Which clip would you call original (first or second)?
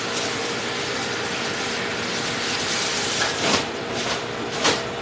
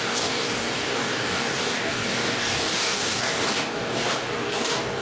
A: first